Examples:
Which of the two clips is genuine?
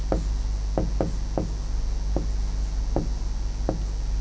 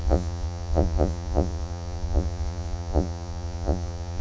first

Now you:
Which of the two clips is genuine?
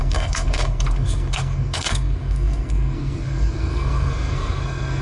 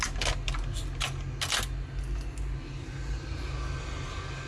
second